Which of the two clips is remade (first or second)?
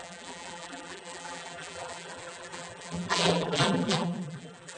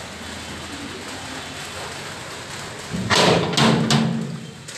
first